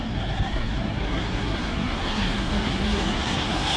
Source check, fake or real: fake